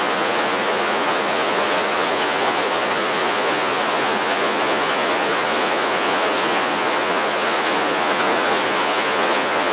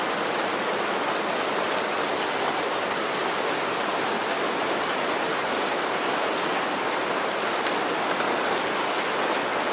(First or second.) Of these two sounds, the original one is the second